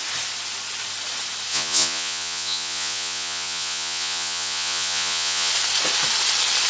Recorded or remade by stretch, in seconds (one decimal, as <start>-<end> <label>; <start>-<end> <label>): 0.0-1.5 recorded; 1.5-5.5 remade; 5.5-6.7 recorded